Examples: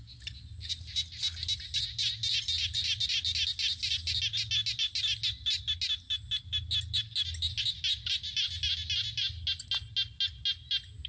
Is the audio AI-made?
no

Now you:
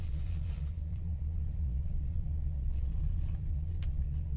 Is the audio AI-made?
yes